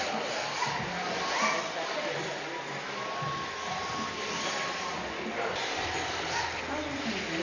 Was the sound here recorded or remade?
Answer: recorded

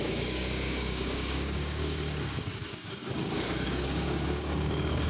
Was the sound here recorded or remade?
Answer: remade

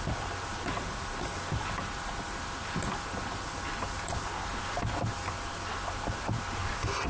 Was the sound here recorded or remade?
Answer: recorded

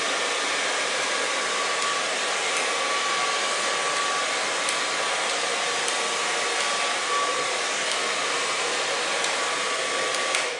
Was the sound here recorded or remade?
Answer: recorded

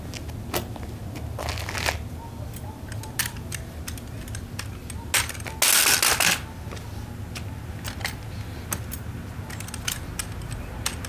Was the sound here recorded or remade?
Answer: recorded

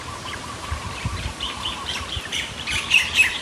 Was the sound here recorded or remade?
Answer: remade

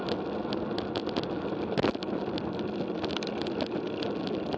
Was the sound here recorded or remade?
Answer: recorded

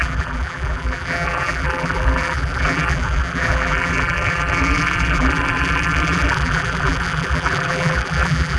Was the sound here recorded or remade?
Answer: remade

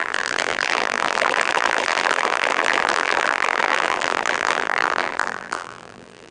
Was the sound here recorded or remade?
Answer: remade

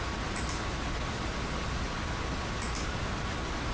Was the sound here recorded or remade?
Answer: recorded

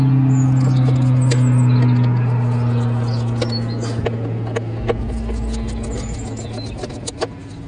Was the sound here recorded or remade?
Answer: recorded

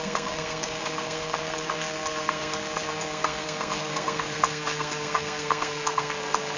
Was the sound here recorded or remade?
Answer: remade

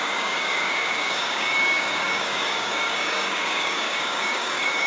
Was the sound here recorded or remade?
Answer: remade